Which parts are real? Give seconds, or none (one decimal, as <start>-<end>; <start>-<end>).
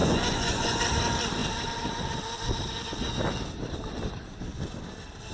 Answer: 0.8-5.3